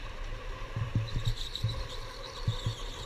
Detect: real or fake real